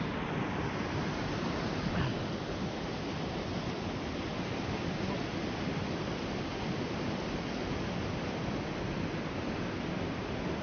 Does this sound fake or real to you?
real